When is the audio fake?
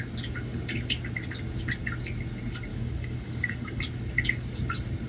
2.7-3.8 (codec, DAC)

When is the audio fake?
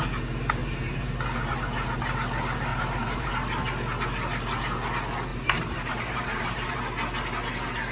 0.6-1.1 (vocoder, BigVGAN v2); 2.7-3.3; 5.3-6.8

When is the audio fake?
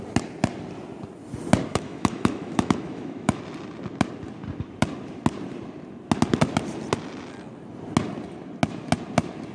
1.7-3.4 (autoencoder, DAC-VAE)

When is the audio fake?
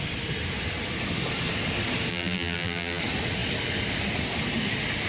2.1-3.0 (vocoder, BigVGAN v2)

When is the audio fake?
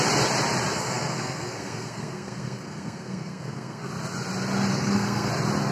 0.7-3.9 (codec, SNAC); 4.7-5.3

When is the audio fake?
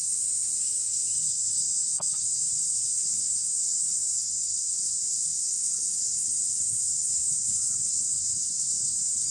0.0-9.3 (codec, HILCodec)